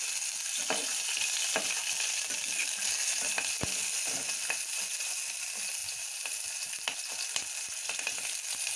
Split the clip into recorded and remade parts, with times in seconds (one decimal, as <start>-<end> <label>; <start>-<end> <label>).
0.0-8.8 recorded